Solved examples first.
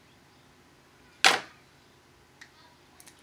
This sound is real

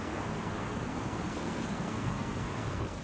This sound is fake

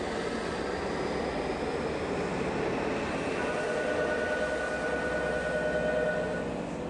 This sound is real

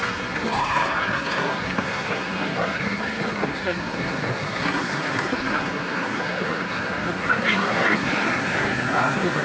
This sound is fake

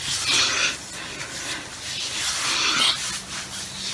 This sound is real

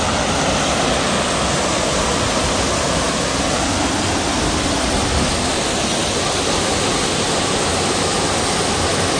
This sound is real